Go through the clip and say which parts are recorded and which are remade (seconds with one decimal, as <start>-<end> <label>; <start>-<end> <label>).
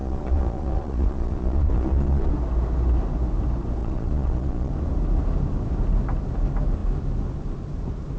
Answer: 0.0-2.3 remade; 2.3-3.8 recorded; 3.8-4.7 remade; 4.7-8.2 recorded